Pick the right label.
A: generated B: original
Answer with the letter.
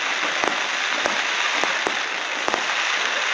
B